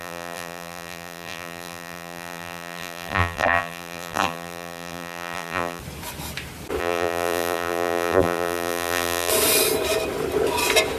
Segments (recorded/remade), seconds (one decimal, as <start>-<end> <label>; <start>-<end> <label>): 0.0-5.8 remade; 5.8-6.8 recorded; 6.8-9.3 remade; 9.3-11.0 recorded